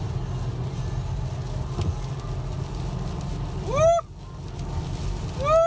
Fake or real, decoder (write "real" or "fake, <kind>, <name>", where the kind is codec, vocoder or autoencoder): real